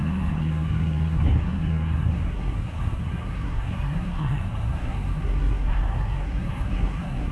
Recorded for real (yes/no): no